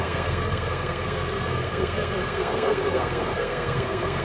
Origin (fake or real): fake